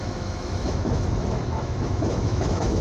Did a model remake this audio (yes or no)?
yes